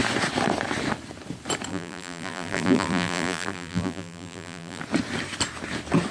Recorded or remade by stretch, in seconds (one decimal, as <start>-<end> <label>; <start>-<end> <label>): 0.0-1.7 recorded; 1.7-4.8 remade; 4.8-6.1 recorded